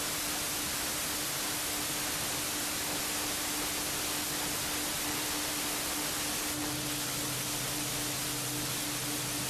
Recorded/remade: recorded